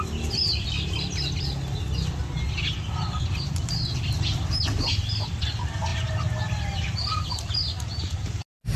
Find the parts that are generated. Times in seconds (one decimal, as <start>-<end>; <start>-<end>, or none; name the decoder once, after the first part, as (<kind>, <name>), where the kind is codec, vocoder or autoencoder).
none